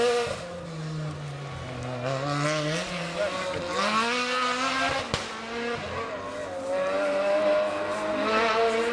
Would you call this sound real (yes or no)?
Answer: yes